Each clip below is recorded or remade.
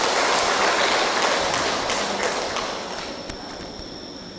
recorded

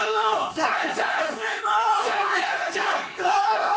remade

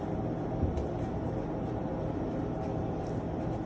recorded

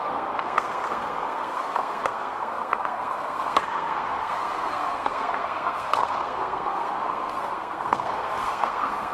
remade